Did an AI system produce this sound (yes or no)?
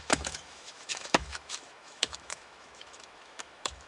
yes